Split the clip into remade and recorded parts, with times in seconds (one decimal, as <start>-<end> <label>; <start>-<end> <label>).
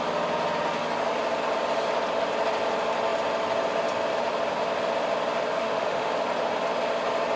0.0-5.5 recorded; 5.5-6.1 remade; 6.1-7.4 recorded